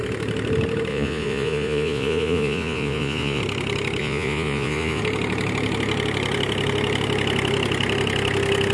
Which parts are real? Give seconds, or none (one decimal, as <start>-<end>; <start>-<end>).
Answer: 0.0-0.9; 3.4-4.0; 5.0-8.7